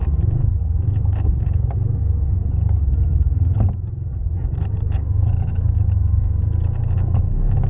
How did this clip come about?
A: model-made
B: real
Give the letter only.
B